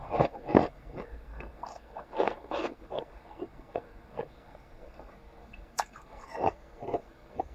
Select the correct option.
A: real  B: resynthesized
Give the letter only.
B